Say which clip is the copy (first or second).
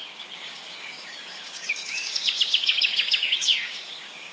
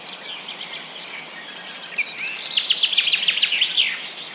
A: first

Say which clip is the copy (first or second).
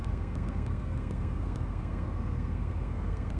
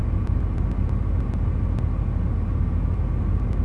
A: first